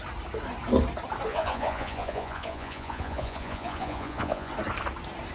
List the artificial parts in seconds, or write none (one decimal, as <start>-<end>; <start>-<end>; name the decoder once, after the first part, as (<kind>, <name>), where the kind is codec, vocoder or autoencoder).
1.3-4.5 (vocoder, Vocos)